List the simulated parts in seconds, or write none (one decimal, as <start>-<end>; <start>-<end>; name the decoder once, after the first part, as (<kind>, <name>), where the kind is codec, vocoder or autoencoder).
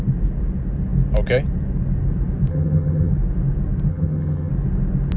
2.5-3.1 (vocoder, HiFi-GAN); 3.9-4.5